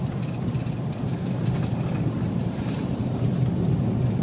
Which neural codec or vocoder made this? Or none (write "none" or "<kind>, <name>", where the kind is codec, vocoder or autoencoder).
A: none